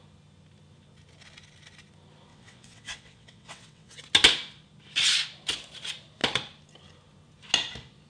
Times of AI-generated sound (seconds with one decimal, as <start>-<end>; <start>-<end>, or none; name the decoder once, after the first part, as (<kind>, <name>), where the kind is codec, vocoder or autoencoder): 2.3-4.0 (vocoder, WaveNeXt)